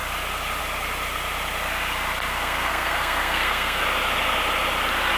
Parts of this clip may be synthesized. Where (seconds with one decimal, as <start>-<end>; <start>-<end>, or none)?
2.3-3.8